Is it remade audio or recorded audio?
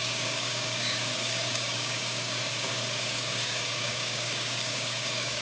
remade